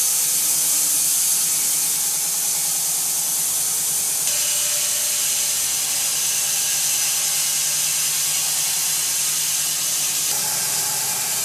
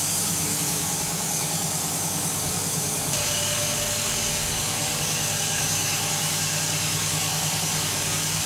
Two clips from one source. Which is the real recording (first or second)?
first